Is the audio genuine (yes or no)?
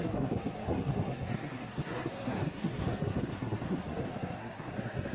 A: no